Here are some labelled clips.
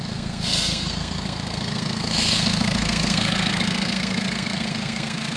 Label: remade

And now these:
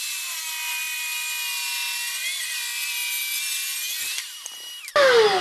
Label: recorded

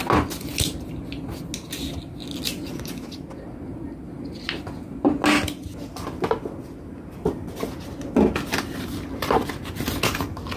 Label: recorded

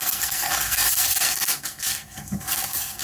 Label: remade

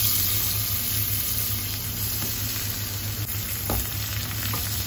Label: recorded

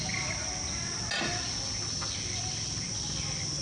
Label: recorded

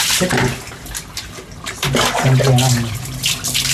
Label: recorded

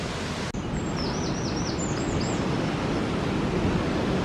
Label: recorded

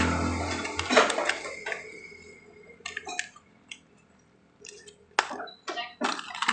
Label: recorded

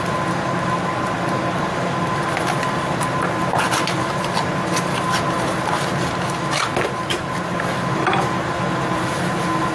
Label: recorded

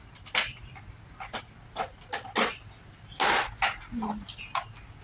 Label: recorded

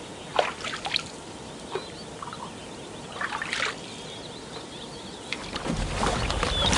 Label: recorded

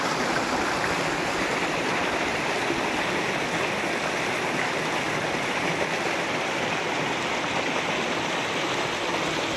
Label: recorded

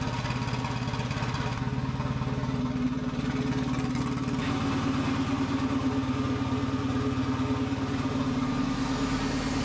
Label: recorded